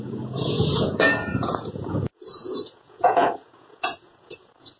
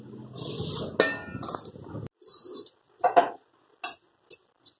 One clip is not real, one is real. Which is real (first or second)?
second